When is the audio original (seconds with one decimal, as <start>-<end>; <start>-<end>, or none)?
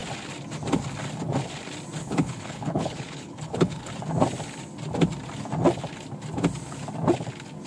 0.0-2.0; 3.9-7.7